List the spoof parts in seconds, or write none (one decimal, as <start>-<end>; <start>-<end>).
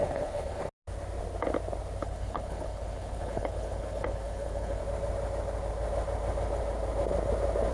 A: 0.0-0.6; 2.0-4.8